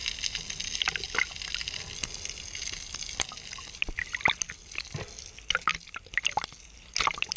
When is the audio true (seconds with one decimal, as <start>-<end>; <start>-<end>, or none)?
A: 0.0-7.4